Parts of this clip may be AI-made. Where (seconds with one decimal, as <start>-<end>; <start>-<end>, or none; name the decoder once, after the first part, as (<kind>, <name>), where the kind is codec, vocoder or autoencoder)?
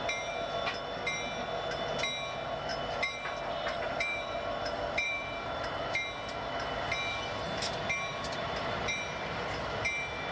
2.7-5.8 (vocoder, BigVGAN v2); 8.1-9.7